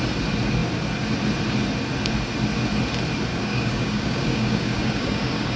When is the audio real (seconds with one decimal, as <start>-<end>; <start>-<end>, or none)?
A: 0.0-3.3